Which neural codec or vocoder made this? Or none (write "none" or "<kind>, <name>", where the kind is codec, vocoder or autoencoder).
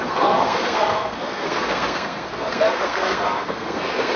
codec, SNAC